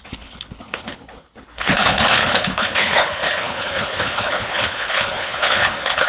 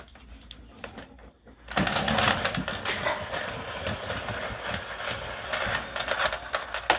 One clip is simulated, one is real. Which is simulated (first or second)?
first